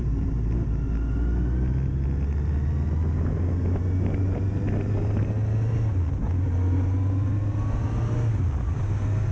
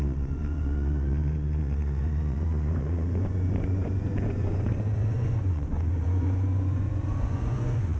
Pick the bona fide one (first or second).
first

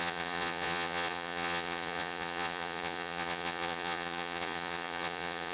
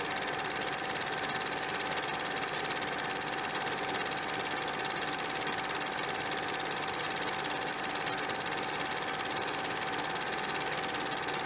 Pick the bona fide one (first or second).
second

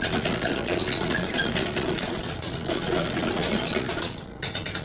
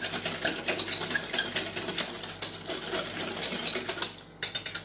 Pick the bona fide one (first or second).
second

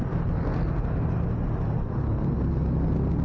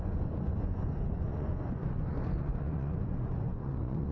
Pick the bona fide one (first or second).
first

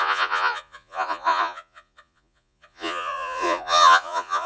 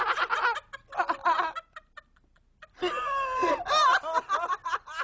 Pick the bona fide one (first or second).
second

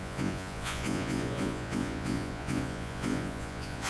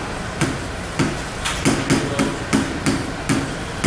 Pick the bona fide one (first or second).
second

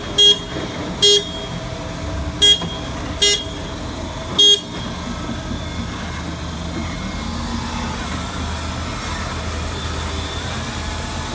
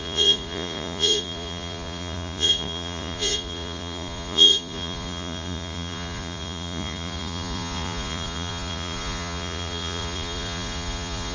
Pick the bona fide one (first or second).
first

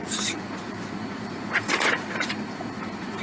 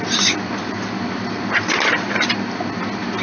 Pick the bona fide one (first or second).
second